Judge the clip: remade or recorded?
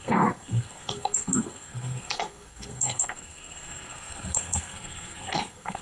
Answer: remade